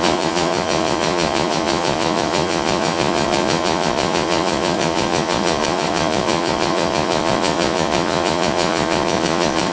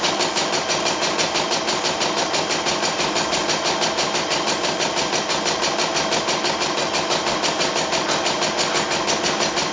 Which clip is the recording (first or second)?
second